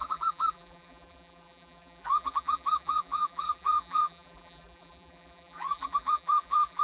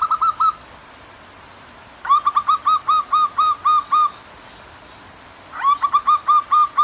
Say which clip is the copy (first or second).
first